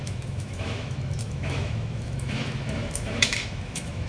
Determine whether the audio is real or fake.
fake